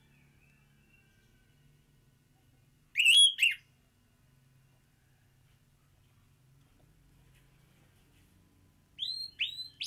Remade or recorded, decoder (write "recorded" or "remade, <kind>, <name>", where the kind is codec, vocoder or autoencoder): recorded